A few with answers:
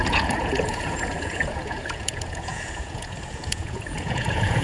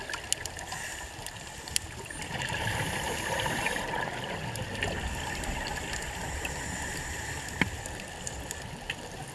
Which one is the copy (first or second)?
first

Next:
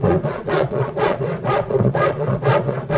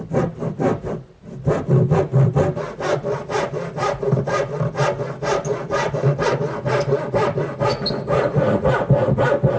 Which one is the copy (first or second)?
first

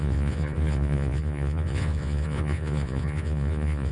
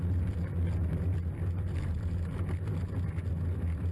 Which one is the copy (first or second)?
first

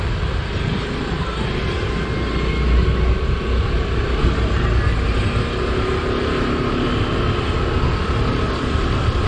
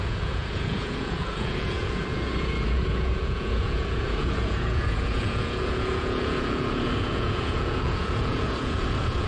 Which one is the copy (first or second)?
second